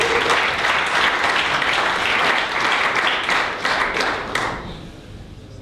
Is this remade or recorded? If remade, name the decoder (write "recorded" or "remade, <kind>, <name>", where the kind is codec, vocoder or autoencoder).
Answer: recorded